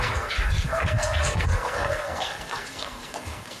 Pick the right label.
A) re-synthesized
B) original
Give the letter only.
A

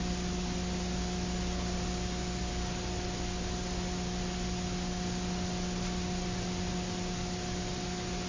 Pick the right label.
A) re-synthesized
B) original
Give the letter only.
B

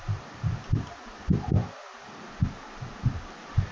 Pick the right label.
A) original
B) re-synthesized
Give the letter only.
A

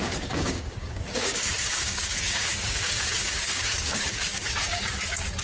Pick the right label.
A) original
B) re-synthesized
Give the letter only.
B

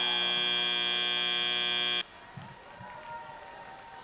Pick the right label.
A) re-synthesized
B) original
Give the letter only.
B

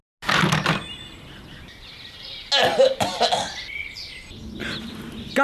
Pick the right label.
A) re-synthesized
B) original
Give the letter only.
B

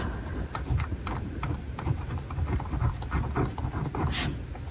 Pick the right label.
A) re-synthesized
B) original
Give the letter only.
B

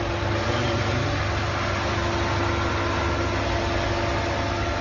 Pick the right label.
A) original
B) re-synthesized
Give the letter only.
A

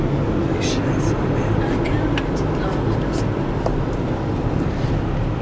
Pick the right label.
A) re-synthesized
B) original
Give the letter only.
B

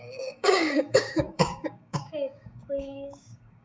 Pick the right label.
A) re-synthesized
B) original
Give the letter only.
A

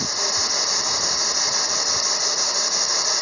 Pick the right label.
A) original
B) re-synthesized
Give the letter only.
A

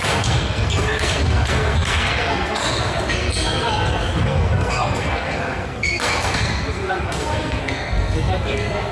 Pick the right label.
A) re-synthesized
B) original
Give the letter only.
A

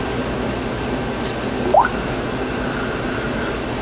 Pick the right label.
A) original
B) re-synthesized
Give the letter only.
A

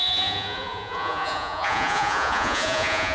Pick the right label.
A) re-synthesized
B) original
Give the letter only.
A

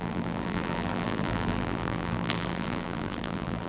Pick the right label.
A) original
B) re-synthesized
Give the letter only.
B